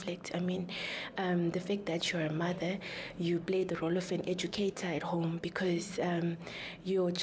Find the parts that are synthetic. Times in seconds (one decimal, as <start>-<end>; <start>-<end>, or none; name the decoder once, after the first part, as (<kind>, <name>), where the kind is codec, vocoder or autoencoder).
3.6-5.1 (codec, DAC)